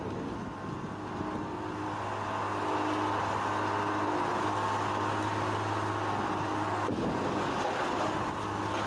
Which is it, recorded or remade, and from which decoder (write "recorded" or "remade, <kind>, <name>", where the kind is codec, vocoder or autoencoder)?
recorded